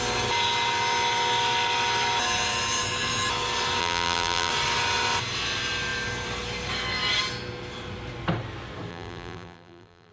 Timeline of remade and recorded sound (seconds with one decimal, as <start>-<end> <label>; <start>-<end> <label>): 0.0-3.8 recorded; 3.8-4.5 remade; 4.5-8.9 recorded; 8.9-10.1 remade